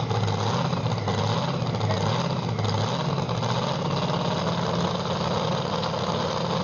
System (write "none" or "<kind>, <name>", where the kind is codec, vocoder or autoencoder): none